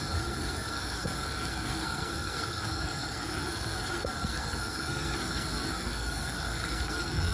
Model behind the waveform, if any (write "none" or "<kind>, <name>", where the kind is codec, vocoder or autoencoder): codec, SNAC